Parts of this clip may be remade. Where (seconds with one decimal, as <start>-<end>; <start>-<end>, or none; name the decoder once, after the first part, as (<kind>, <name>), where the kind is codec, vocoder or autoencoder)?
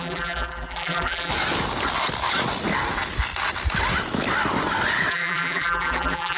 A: 0.0-1.3 (vocoder, BigVGAN v2); 5.1-6.4